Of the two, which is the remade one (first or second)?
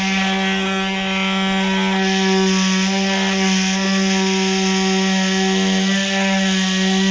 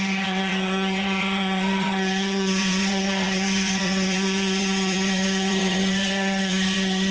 second